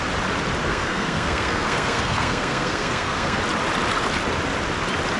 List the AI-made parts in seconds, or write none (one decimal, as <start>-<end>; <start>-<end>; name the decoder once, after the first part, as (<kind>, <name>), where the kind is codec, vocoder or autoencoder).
0.7-3.4 (codec, SNAC)